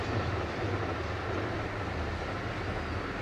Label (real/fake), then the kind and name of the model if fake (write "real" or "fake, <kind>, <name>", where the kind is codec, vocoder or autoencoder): real